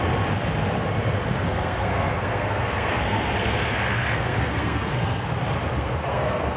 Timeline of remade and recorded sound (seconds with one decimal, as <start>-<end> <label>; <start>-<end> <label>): 0.0-1.3 recorded; 1.3-5.3 remade; 5.3-5.7 recorded; 5.7-6.6 remade